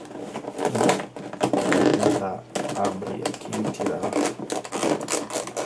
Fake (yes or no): no